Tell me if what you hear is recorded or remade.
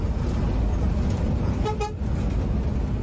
recorded